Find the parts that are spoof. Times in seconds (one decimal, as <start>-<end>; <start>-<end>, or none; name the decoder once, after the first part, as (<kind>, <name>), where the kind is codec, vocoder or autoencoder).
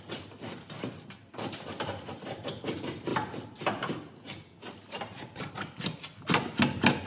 none